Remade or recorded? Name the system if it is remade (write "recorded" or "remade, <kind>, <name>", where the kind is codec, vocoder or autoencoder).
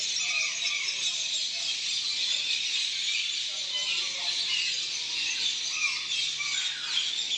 recorded